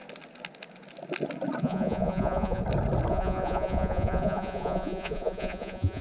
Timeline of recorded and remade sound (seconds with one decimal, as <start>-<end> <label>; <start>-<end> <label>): 0.0-1.6 recorded; 1.6-2.6 remade; 2.6-3.1 recorded; 3.1-6.0 remade